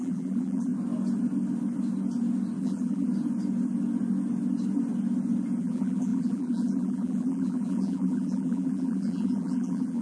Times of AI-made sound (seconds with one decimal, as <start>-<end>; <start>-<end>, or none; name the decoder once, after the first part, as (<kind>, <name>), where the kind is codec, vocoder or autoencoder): 0.0-0.7 (vocoder, BigVGAN v2); 2.6-3.1; 5.6-10.0